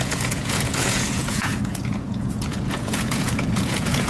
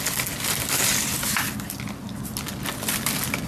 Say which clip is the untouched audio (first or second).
second